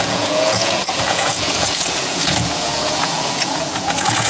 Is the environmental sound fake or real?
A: fake